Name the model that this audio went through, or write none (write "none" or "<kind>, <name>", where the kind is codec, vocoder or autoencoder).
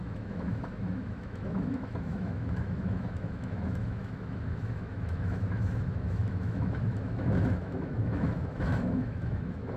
autoencoder, DAC-VAE